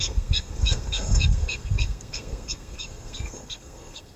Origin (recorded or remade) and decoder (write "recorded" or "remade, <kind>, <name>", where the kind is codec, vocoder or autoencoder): remade, codec, SNAC